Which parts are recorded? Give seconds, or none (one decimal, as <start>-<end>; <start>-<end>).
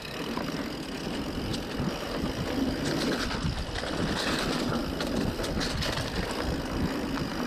0.0-7.5